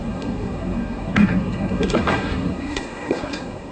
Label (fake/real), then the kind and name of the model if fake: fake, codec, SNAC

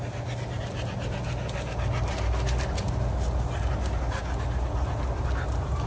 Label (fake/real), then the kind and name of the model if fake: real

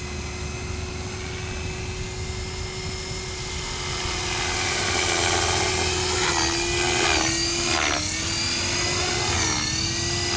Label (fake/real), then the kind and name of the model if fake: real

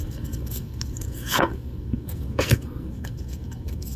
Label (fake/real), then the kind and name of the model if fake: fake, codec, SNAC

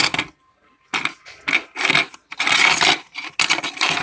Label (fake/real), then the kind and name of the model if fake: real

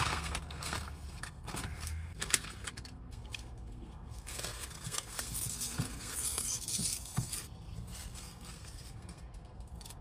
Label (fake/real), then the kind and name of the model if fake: fake, codec, SNAC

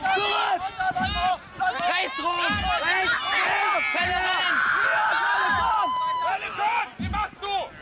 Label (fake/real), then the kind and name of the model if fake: real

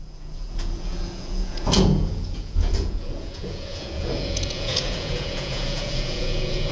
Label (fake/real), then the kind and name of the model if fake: fake, vocoder, Vocos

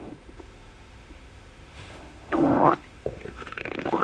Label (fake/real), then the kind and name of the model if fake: fake, autoencoder, DAC-VAE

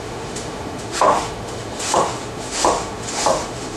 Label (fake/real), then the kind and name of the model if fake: fake, autoencoder, DAC-VAE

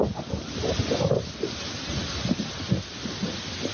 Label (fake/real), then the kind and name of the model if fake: real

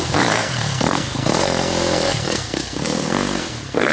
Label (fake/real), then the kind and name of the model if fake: fake, codec, SNAC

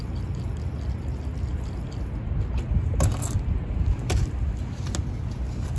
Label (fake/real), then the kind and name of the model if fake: real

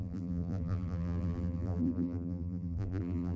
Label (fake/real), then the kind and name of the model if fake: fake, vocoder, BigVGAN v2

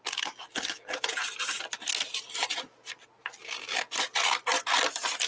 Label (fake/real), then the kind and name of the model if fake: real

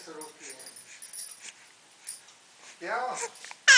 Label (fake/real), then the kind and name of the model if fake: real